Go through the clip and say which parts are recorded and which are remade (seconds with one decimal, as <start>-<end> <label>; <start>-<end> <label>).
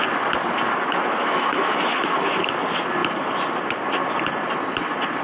0.0-0.7 recorded; 0.7-2.3 remade; 2.3-5.2 recorded